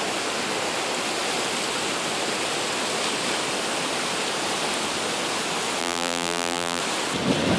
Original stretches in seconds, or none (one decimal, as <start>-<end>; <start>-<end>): 0.0-5.8; 6.8-7.6